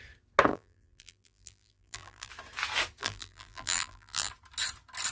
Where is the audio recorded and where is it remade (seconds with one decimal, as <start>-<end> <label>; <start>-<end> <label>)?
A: 0.0-0.5 recorded; 0.5-2.3 remade; 2.3-3.0 recorded; 3.0-4.3 remade; 4.3-5.1 recorded